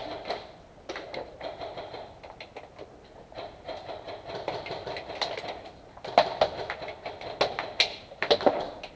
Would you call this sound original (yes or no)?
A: yes